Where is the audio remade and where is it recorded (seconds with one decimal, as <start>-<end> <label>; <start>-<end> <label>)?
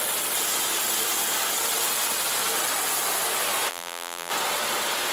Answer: 0.0-3.7 recorded; 3.7-4.3 remade; 4.3-5.1 recorded